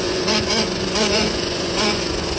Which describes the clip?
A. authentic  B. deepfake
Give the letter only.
B